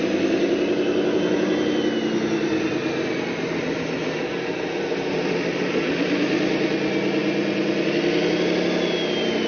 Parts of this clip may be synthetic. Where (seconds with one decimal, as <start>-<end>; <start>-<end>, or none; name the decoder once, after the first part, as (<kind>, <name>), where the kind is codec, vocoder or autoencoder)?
none